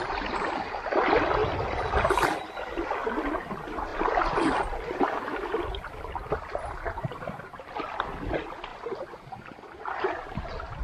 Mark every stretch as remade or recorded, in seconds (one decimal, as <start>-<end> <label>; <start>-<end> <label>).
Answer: 0.0-1.4 remade; 1.4-3.0 recorded; 3.0-3.9 remade; 3.9-5.0 recorded; 5.0-8.7 remade; 8.7-9.6 recorded; 9.6-10.8 remade